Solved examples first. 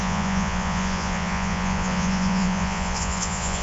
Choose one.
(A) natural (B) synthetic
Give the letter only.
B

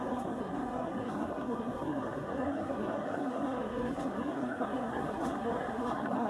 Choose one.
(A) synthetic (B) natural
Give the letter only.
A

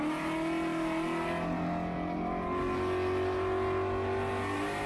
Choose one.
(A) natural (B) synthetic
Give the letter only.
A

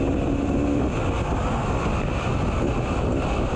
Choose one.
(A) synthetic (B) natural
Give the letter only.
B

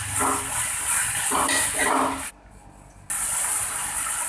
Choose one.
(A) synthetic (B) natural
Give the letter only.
B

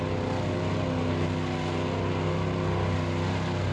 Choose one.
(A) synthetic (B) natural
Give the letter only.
B